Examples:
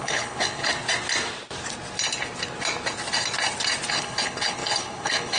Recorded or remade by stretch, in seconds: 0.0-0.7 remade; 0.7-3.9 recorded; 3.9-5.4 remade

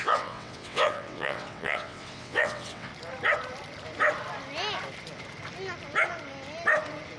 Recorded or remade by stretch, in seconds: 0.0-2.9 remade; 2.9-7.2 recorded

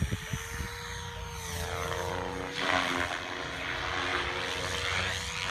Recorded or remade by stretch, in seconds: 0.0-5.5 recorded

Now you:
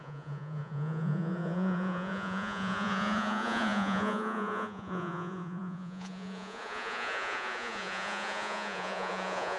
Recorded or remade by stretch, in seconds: 0.0-9.6 remade

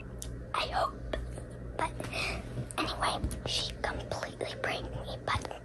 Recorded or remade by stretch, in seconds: 0.0-5.6 recorded

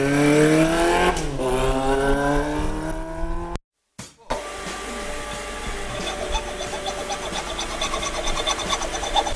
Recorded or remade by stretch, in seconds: 0.0-9.4 recorded